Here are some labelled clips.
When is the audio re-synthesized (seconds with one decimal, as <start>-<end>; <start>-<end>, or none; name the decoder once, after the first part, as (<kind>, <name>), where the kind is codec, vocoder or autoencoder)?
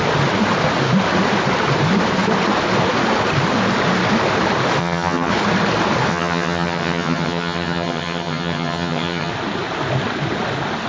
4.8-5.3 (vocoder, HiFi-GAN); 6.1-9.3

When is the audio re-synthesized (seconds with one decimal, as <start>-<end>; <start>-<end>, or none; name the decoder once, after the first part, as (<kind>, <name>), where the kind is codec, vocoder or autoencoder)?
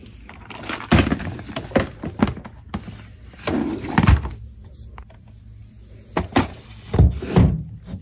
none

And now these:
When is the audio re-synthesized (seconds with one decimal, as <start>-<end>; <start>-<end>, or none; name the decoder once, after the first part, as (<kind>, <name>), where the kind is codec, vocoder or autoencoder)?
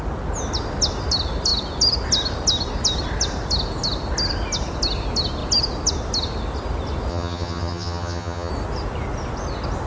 7.1-8.5 (vocoder, HiFi-GAN)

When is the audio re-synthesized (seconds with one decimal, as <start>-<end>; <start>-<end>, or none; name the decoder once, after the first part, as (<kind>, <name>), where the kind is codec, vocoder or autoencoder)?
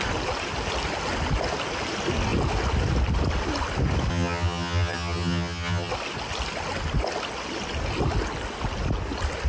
4.1-5.9 (vocoder, HiFi-GAN)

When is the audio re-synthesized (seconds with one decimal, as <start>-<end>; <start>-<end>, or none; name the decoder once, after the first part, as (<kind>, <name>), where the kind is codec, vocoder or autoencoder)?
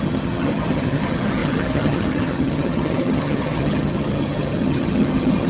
0.0-5.5 (vocoder, HiFi-GAN)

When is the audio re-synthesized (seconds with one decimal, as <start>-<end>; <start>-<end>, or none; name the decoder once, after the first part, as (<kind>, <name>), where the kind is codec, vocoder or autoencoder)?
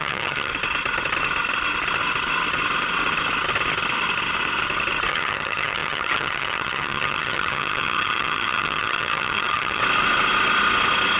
0.0-0.5 (vocoder, HiFi-GAN); 5.1-9.8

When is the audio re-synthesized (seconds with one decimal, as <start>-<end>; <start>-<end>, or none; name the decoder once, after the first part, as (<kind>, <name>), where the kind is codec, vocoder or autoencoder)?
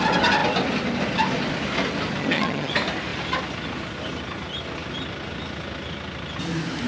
2.2-2.7 (vocoder, HiFi-GAN)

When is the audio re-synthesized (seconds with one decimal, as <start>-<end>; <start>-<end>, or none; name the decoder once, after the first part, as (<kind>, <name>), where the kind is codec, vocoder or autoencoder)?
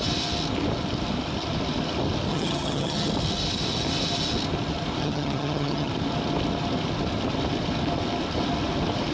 2.3-3.1 (vocoder, HiFi-GAN); 5.0-5.9